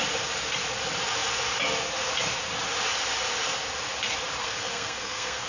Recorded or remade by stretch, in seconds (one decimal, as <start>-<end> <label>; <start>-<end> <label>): 0.0-4.4 recorded; 4.4-5.5 remade